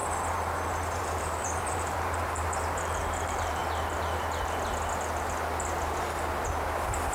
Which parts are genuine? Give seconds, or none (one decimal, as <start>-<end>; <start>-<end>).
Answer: 0.0-1.0; 3.6-7.1